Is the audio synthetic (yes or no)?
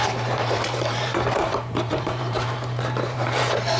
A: yes